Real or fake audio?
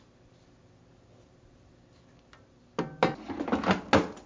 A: real